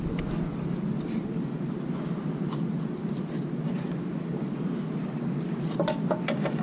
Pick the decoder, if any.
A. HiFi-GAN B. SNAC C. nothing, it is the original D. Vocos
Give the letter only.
C